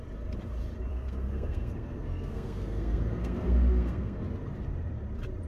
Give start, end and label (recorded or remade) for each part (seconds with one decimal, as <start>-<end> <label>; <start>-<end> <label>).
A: 0.0-0.9 recorded; 0.9-4.2 remade; 4.2-5.5 recorded